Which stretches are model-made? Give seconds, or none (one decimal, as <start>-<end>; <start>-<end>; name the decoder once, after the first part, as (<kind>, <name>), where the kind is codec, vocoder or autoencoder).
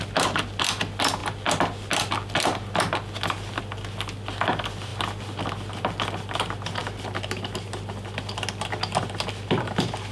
none